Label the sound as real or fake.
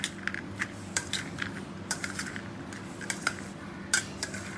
real